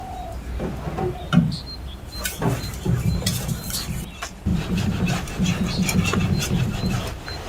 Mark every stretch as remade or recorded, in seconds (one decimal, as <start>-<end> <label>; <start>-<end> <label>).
0.0-5.5 remade; 5.5-6.2 recorded; 6.2-7.5 remade